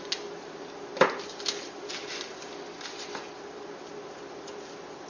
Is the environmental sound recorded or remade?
recorded